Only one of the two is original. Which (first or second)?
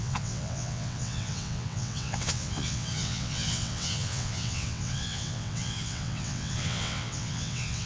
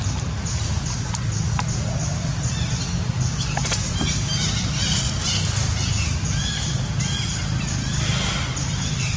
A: second